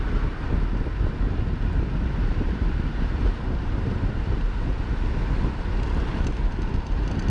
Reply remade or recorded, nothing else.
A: remade